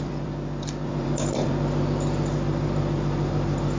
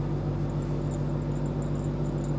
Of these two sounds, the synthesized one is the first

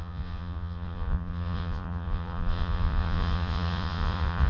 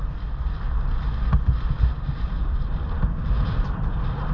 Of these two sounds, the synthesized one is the first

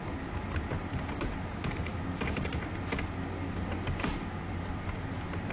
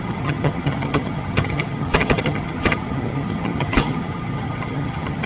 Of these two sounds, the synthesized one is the second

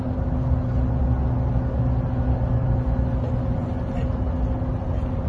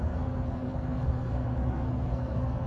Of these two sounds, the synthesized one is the second